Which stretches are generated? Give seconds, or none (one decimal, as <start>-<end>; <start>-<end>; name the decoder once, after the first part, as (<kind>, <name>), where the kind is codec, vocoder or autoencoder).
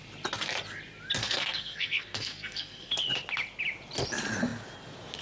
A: 1.2-2.9 (codec, SNAC)